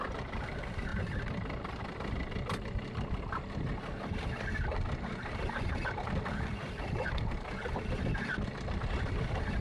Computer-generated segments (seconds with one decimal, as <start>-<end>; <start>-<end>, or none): 0.0-0.9; 5.4-9.6